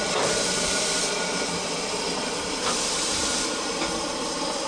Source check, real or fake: fake